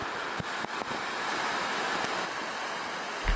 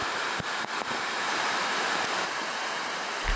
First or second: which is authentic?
first